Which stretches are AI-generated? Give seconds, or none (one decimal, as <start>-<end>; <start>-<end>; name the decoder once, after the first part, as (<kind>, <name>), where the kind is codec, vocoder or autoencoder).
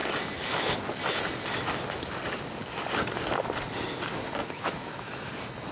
4.4-5.3 (autoencoder, DAC-VAE)